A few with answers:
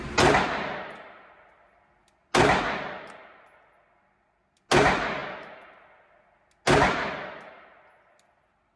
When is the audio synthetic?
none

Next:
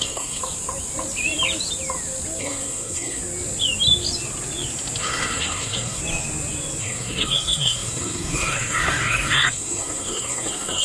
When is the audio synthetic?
0.0-0.4 (codec, SNAC); 2.4-3.2; 5.0-6.0; 6.8-10.8

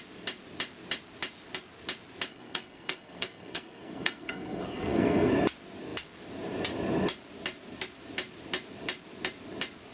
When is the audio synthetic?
2.3-5.3 (codec, SNAC)

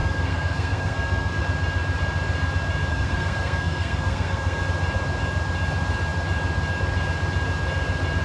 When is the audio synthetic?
0.0-1.4 (codec, SNAC); 2.9-4.6

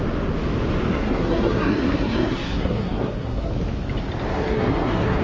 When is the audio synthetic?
0.9-3.5 (codec, SNAC); 4.3-5.2